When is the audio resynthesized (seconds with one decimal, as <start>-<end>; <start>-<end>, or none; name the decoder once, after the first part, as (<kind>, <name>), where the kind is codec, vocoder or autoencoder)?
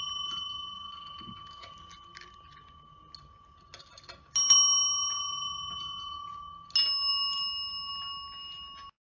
none